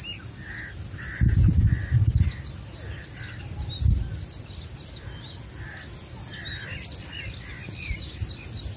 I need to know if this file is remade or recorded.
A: recorded